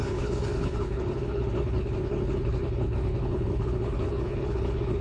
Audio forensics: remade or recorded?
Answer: remade